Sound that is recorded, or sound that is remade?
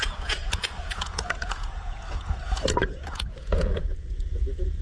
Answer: remade